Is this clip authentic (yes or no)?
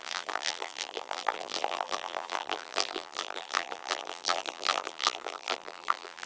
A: no